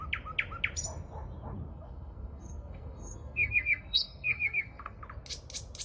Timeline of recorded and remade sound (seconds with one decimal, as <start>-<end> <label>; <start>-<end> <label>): 0.0-1.7 recorded; 1.7-5.0 remade; 5.0-5.8 recorded